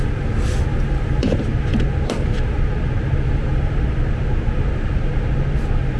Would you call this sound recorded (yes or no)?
yes